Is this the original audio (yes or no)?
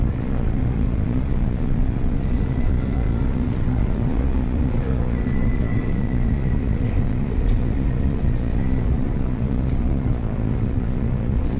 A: no